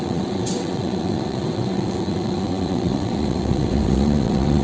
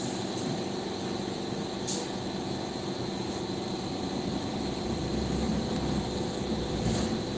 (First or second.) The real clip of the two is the second